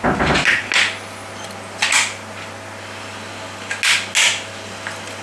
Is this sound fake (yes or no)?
no